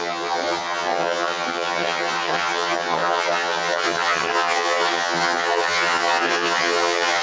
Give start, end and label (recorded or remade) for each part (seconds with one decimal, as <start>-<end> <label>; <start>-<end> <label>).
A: 0.0-7.2 remade

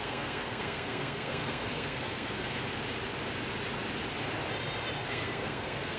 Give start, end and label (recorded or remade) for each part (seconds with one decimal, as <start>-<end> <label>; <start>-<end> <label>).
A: 0.0-2.6 remade; 2.6-5.1 recorded; 5.1-6.0 remade

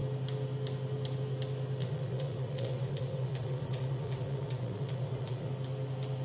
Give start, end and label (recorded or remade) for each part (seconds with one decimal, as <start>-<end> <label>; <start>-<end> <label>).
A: 0.0-1.8 recorded; 1.8-5.5 remade; 5.5-6.2 recorded

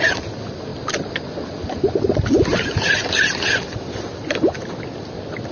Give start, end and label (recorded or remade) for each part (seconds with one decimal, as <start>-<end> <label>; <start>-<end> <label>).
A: 0.0-5.5 recorded

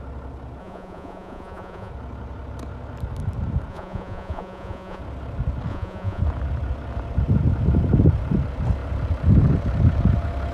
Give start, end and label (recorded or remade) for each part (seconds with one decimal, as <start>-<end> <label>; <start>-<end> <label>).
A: 0.0-0.6 recorded; 0.6-1.9 remade; 1.9-3.7 recorded; 3.7-5.0 remade; 5.0-5.7 recorded; 5.7-6.2 remade; 6.2-10.5 recorded